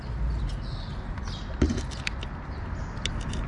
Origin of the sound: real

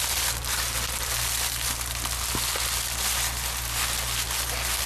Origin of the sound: real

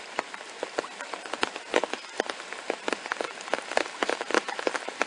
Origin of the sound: real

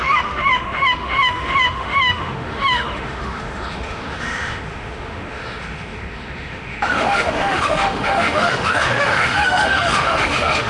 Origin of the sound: fake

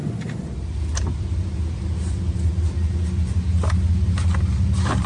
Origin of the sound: real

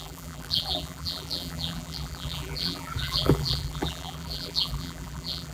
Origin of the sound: fake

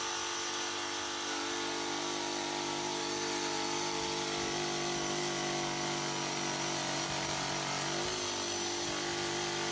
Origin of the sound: real